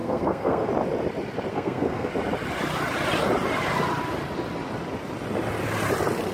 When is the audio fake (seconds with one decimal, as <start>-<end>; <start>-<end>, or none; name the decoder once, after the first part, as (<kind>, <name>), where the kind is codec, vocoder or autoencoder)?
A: 0.0-0.7 (codec, SNAC); 1.5-2.1